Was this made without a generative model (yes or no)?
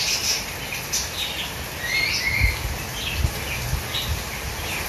yes